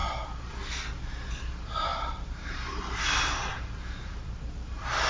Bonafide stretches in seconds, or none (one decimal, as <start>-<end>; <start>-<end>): 0.0-1.9; 3.0-3.5; 4.2-5.1